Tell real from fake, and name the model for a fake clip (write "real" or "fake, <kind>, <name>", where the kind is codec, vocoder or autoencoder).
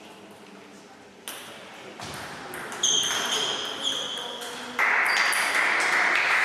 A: real